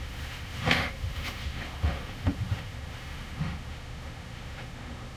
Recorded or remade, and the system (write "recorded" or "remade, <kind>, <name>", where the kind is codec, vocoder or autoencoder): remade, autoencoder, DAC-VAE